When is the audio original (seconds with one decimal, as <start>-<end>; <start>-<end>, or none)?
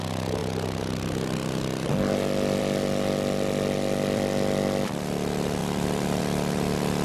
0.0-5.6; 6.2-7.0